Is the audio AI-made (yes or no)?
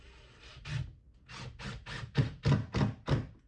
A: no